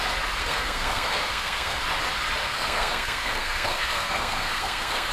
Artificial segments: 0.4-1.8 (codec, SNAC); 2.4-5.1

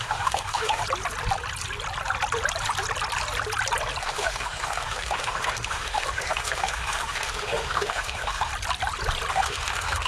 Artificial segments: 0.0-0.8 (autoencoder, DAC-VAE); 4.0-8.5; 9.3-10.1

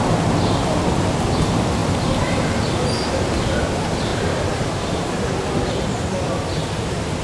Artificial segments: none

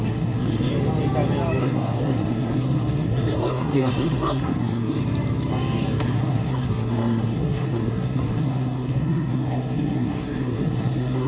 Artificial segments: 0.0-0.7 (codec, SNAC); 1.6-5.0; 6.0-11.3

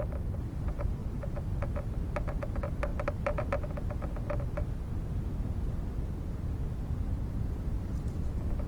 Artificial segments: 0.0-1.0 (vocoder, BigVGAN v2); 2.0-2.9; 6.9-8.7

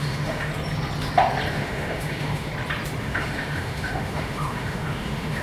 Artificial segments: 0.0-0.5 (autoencoder, DAC-VAE); 1.5-2.5; 3.0-5.4